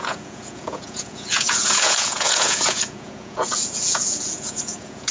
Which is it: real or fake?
fake